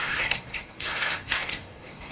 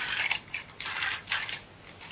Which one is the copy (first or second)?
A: first